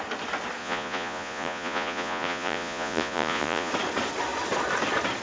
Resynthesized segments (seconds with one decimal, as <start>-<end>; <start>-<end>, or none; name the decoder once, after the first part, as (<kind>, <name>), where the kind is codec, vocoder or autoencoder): 0.6-3.7 (vocoder, Vocos)